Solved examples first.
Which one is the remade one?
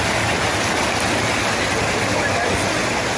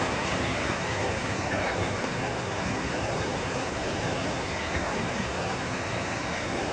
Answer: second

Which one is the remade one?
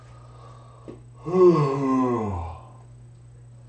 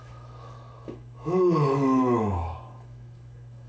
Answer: second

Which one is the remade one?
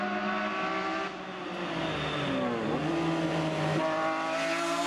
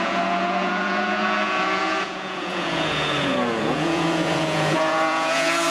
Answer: second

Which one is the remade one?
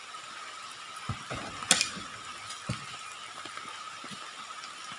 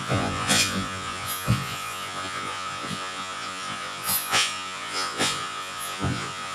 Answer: second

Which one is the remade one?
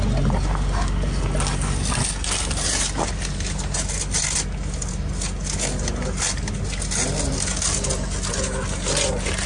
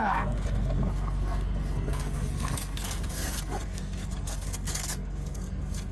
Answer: second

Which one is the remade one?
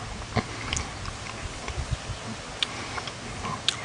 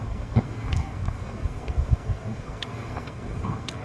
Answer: second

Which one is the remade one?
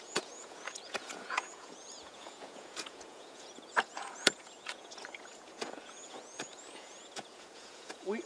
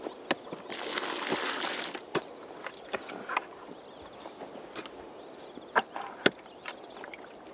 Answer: first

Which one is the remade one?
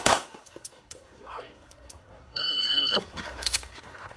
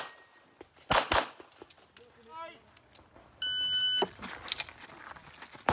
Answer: first